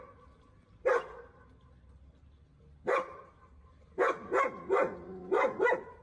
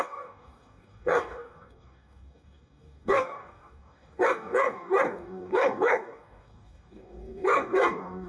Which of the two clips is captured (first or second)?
first